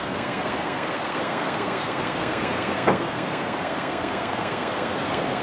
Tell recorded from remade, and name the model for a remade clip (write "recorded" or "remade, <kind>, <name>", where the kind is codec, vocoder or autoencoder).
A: remade, codec, SNAC